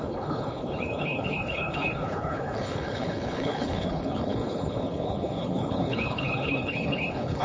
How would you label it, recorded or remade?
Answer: remade